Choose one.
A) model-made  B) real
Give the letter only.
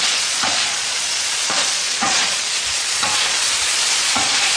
A